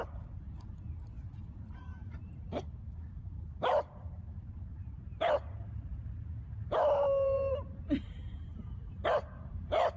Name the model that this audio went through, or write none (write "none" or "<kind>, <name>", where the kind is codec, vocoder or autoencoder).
vocoder, BigVGAN v2